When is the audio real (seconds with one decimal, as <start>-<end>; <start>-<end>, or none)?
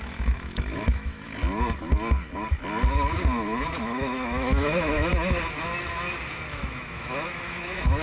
1.4-3.7; 5.1-6.5